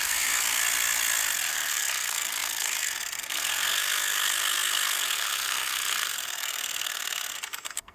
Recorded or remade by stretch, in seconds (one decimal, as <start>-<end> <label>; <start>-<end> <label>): 0.0-0.6 remade; 0.6-1.5 recorded; 1.5-7.9 remade